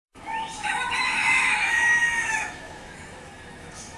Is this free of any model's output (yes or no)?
no